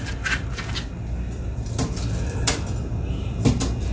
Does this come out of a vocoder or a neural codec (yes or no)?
no